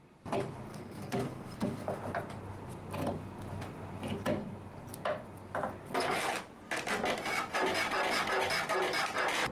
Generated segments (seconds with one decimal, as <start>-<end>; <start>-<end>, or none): 0.7-2.0